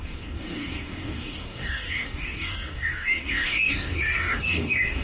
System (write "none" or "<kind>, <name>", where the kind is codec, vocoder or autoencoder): codec, DAC